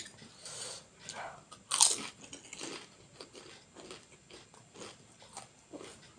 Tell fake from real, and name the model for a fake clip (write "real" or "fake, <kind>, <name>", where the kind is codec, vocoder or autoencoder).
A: real